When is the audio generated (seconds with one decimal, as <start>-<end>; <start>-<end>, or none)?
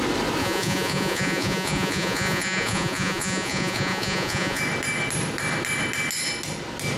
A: 0.4-4.6